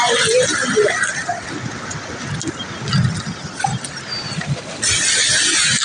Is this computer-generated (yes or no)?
no